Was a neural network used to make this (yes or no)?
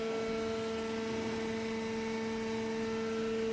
no